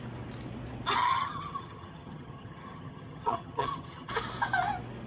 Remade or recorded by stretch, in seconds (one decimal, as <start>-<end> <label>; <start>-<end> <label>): 0.0-1.0 recorded; 1.0-4.1 remade; 4.1-5.1 recorded